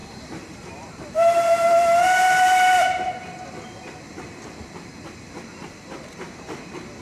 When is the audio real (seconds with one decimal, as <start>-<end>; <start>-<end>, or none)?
3.1-7.0